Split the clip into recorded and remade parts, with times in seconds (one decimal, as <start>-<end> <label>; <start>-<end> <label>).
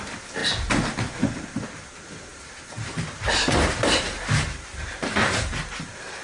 0.0-0.4 remade; 0.4-1.8 recorded; 1.8-6.2 remade